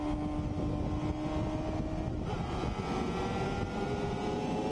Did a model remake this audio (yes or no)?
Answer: no